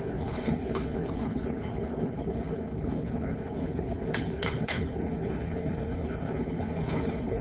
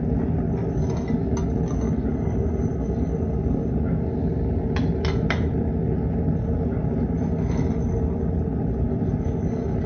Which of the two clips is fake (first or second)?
first